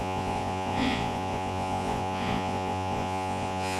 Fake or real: fake